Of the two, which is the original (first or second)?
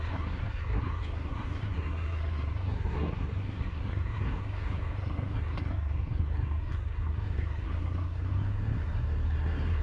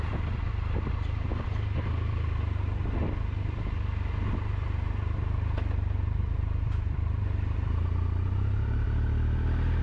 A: second